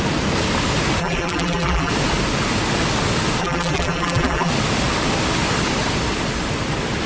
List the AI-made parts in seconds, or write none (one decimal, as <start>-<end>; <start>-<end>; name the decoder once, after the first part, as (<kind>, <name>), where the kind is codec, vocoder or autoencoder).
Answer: 1.0-1.9 (vocoder, BigVGAN v2); 3.4-4.5